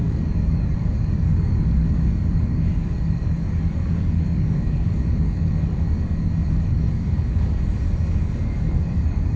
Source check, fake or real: fake